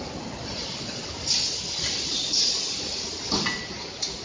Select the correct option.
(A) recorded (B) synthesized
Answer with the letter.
A